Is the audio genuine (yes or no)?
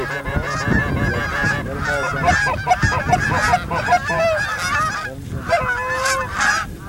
yes